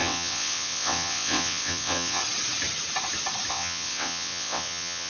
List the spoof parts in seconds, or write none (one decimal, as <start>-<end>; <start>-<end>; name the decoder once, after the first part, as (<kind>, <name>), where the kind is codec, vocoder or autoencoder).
0.0-2.2 (vocoder, WaveNeXt); 3.5-5.1